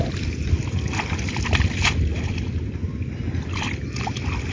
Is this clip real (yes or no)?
yes